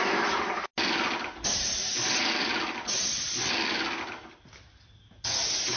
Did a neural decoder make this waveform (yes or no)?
no